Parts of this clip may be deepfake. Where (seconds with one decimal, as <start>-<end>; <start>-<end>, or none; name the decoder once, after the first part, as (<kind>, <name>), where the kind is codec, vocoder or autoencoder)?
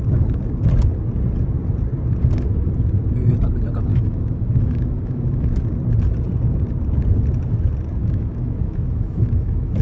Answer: 3.9-5.5 (autoencoder, DAC-VAE); 8.0-9.8